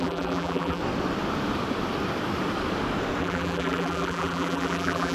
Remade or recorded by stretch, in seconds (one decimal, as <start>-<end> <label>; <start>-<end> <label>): 0.0-0.8 remade; 0.8-3.2 recorded; 3.2-5.1 remade